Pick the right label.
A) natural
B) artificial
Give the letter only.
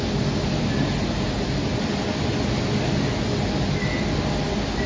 A